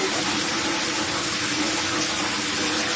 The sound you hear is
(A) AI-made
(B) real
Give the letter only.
B